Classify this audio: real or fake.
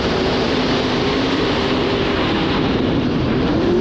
fake